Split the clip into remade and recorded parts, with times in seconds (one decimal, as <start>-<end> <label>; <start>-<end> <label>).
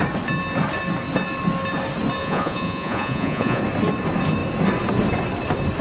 0.0-2.2 recorded; 2.2-3.6 remade; 3.6-5.8 recorded